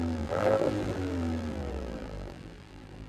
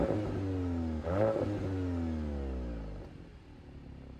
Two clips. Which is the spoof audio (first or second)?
first